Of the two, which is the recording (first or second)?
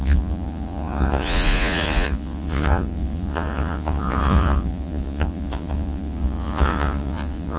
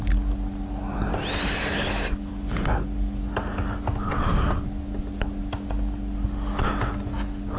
second